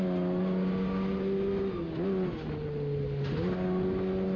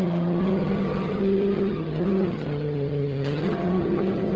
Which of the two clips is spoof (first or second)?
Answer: second